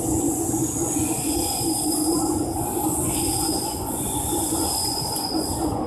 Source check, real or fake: fake